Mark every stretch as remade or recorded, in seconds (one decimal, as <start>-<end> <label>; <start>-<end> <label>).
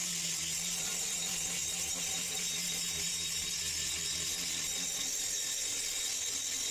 0.0-1.6 recorded; 1.6-3.6 remade; 3.6-6.7 recorded